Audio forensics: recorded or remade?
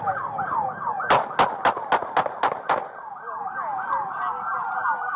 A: recorded